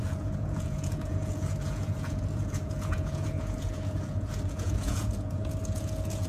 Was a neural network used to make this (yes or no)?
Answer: yes